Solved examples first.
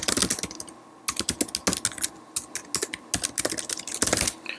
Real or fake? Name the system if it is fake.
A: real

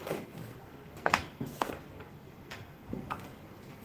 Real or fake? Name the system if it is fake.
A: fake, codec, SNAC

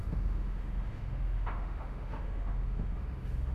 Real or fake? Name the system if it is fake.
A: fake, autoencoder, DAC-VAE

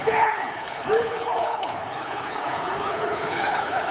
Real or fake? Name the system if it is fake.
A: fake, codec, HILCodec